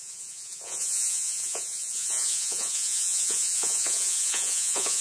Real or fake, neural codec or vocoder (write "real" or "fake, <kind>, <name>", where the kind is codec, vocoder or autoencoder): fake, vocoder, Vocos